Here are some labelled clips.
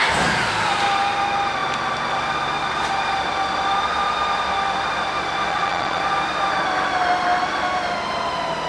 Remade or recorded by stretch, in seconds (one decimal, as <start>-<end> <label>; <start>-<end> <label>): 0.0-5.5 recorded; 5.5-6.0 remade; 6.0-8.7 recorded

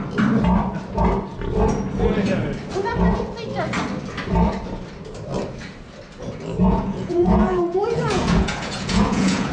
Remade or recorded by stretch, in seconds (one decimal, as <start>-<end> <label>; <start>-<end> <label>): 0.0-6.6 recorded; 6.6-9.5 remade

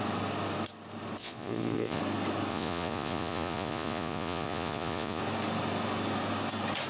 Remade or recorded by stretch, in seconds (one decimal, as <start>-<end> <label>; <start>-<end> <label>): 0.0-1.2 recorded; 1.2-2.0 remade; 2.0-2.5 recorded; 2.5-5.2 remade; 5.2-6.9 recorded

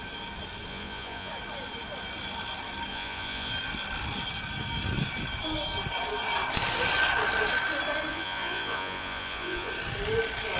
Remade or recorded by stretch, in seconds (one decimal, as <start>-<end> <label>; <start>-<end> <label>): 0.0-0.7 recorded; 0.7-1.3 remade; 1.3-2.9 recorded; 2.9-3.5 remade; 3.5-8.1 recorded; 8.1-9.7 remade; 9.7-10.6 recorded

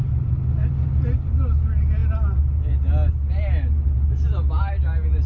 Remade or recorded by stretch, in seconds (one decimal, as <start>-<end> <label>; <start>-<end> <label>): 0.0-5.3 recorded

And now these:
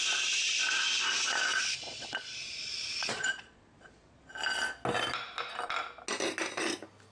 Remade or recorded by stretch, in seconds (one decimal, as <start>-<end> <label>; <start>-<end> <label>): 0.0-1.5 recorded; 1.5-4.3 remade; 4.3-7.1 recorded

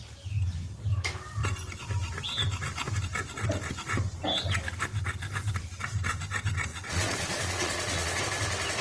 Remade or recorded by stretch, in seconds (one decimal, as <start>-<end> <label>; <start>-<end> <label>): 0.0-6.7 recorded; 6.7-8.2 remade; 8.2-8.8 recorded

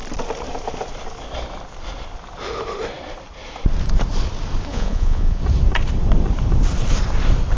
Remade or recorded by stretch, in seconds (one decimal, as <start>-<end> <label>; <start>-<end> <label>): 0.0-4.7 recorded; 4.7-5.4 remade; 5.4-7.6 recorded